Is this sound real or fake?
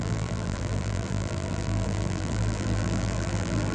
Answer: fake